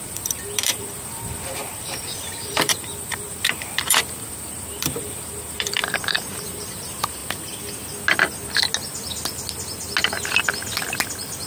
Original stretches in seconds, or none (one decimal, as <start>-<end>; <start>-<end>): 7.2-11.5